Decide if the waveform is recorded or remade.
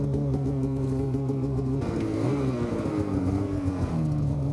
remade